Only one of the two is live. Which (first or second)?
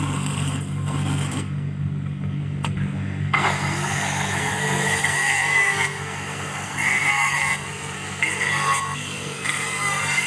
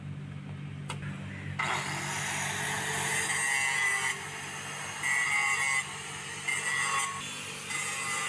second